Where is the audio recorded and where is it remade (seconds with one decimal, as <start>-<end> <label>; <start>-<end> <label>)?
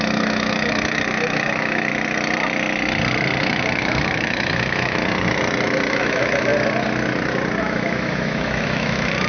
0.0-1.9 remade; 1.9-3.4 recorded; 3.4-5.0 remade; 5.0-5.9 recorded; 5.9-6.5 remade; 6.5-7.6 recorded; 7.6-9.3 remade